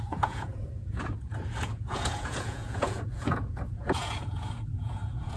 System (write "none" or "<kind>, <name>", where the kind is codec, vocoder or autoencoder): vocoder, Vocos